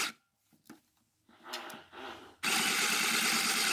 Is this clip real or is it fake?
real